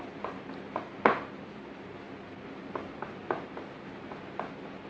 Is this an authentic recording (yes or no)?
yes